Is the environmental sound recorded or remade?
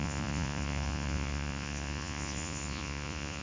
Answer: remade